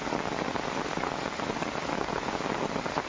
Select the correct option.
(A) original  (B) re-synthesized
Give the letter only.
A